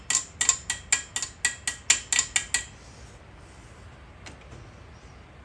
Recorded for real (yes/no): yes